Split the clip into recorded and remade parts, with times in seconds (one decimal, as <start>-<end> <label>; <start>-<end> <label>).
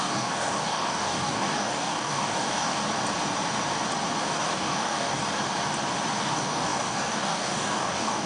0.0-2.8 remade; 2.8-4.2 recorded; 4.2-5.2 remade; 5.2-6.2 recorded; 6.2-8.3 remade